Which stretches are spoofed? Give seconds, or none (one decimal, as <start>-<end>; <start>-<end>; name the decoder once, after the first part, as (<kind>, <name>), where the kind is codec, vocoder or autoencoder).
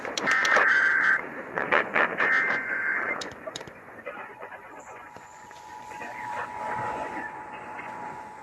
0.0-8.4 (vocoder, Vocos)